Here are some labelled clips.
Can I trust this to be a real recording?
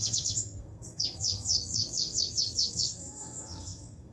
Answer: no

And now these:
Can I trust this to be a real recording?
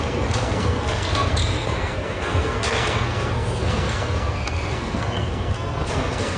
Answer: no